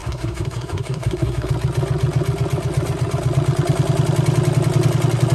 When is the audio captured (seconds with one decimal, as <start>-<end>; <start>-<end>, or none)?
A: 1.5-5.3